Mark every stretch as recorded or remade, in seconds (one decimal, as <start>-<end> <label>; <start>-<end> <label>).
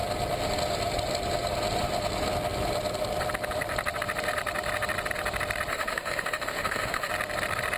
0.0-5.7 recorded; 5.7-7.1 remade; 7.1-7.8 recorded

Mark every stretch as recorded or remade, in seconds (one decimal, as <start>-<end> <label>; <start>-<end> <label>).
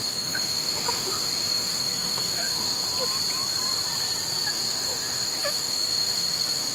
0.0-2.8 remade; 2.8-4.5 recorded; 4.5-6.7 remade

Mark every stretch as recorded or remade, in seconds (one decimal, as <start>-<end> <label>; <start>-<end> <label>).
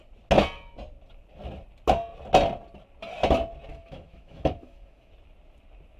0.0-3.7 recorded; 3.7-5.1 remade; 5.1-6.0 recorded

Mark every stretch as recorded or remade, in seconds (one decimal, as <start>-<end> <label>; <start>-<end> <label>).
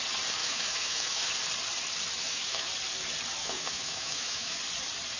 0.0-0.4 recorded; 0.4-1.3 remade; 1.3-2.2 recorded; 2.2-2.7 remade; 2.7-3.4 recorded; 3.4-4.6 remade; 4.6-5.2 recorded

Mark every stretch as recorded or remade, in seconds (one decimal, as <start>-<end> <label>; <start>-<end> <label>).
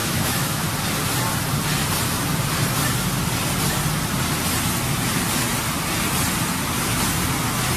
0.0-0.7 remade; 0.7-7.8 recorded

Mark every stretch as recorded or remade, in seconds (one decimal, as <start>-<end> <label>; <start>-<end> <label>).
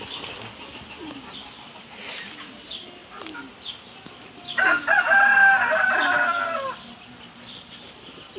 0.0-8.4 recorded